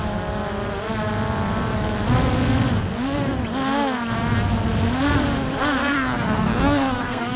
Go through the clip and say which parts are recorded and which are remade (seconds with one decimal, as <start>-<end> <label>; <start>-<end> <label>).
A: 0.0-5.8 recorded; 5.8-7.4 remade